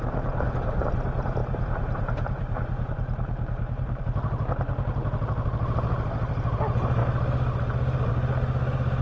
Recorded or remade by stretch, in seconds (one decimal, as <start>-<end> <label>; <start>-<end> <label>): 0.0-1.4 recorded; 1.4-4.0 remade; 4.0-9.0 recorded